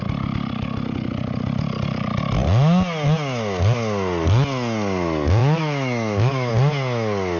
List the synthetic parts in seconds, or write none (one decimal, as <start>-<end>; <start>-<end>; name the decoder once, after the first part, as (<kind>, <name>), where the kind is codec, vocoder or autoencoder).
5.4-6.5 (autoencoder, DAC-VAE)